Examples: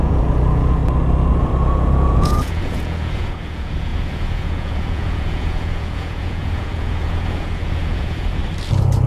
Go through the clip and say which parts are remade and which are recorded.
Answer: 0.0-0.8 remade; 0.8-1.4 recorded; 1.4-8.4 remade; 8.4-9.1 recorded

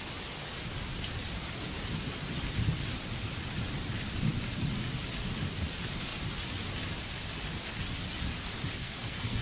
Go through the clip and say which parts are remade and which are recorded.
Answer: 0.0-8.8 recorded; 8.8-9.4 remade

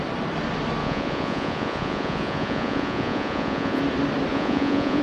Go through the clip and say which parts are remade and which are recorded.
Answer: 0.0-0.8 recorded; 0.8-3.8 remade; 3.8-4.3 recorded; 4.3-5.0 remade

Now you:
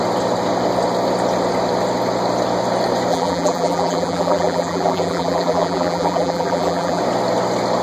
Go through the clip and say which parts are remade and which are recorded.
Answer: 0.0-3.1 recorded; 3.1-7.0 remade; 7.0-7.8 recorded

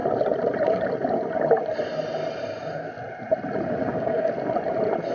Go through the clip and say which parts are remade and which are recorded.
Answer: 0.0-3.8 recorded; 3.8-4.3 remade; 4.3-5.1 recorded

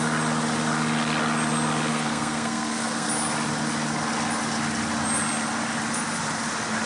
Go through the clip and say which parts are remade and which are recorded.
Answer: 0.0-1.9 recorded; 1.9-3.1 remade; 3.1-6.9 recorded

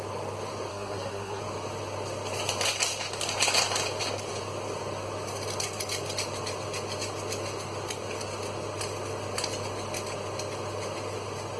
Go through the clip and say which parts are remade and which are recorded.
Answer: 0.0-0.7 recorded; 0.7-1.4 remade; 1.4-11.6 recorded